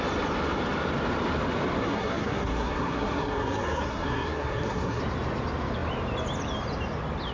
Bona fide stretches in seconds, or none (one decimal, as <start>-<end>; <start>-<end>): 0.0-1.8; 5.0-7.3